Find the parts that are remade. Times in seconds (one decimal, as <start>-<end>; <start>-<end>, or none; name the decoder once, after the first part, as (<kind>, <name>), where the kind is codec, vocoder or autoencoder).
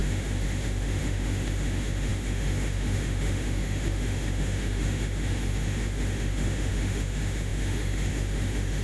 0.0-8.8 (autoencoder, DAC-VAE)